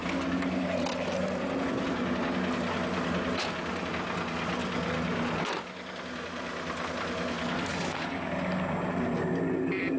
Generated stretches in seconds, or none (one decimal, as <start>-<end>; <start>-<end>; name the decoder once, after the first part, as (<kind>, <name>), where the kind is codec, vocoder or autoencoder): 7.7-8.3 (codec, DAC)